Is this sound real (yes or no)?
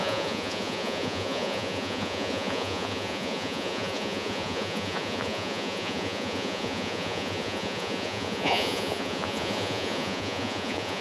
no